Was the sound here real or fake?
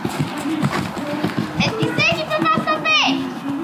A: real